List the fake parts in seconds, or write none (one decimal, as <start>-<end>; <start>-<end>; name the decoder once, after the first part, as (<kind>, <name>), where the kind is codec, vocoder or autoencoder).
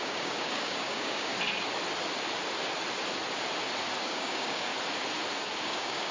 0.0-1.3 (codec, DAC); 4.0-4.7; 5.6-6.1